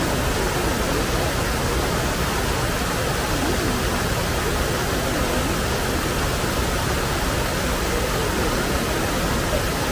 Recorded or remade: recorded